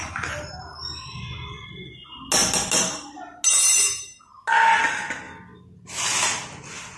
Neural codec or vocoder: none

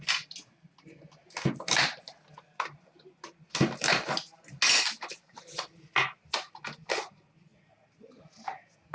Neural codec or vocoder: none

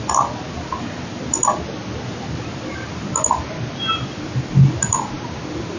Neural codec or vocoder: none